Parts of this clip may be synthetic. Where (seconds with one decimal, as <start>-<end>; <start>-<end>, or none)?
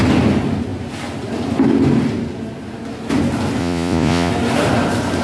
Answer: 3.6-4.3